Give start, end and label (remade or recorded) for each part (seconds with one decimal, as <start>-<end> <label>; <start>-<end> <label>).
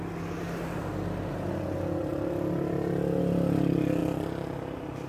0.0-4.0 recorded; 4.0-5.1 remade